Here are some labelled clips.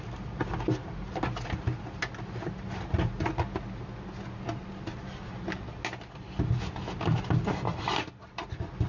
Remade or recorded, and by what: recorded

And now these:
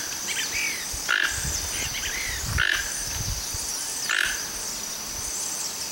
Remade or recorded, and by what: recorded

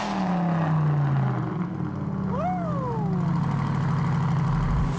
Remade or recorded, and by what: recorded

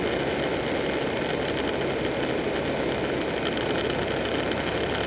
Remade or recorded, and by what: recorded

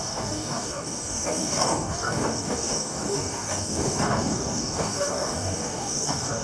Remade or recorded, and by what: remade, codec, DAC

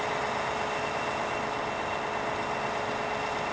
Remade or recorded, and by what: recorded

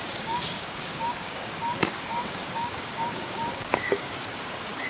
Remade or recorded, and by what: remade, codec, DAC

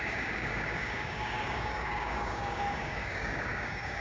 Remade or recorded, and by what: remade, codec, DAC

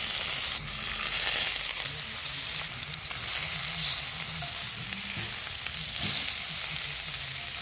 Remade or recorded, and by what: recorded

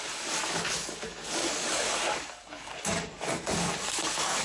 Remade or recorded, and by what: remade, codec, DAC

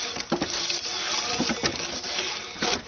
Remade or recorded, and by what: recorded